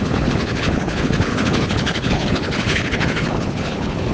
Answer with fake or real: fake